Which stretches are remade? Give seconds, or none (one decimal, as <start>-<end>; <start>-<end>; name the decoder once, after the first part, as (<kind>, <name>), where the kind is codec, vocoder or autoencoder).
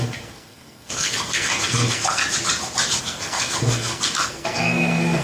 0.0-2.2 (codec, SNAC); 3.0-5.2